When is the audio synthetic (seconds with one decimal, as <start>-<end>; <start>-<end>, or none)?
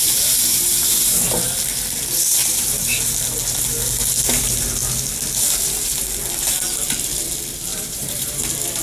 2.4-3.1; 7.7-8.4